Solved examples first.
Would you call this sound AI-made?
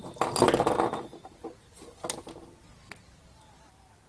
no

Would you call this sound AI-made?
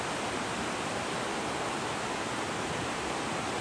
yes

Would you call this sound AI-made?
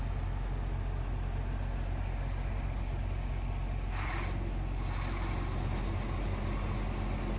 no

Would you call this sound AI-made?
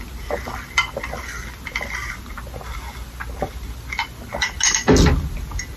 no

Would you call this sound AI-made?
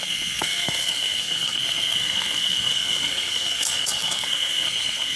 yes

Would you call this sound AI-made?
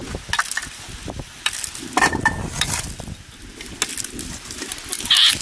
no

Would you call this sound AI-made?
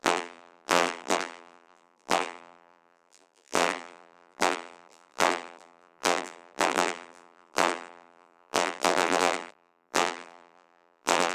yes